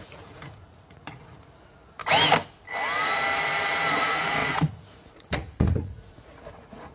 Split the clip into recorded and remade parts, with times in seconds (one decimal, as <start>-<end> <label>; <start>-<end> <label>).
0.0-2.0 remade; 2.0-4.0 recorded; 4.0-6.9 remade